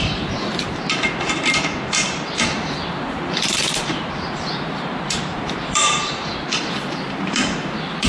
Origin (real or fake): fake